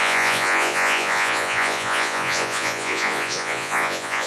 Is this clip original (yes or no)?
no